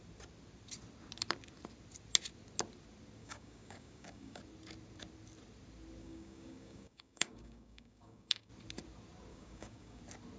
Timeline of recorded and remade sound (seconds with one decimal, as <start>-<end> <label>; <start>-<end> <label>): 0.0-3.2 recorded; 3.2-4.4 remade; 4.4-6.0 recorded; 6.0-8.5 remade; 8.5-9.3 recorded; 9.3-10.0 remade; 10.0-10.4 recorded